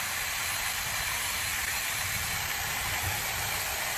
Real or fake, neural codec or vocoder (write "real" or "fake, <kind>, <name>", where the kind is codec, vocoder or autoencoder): real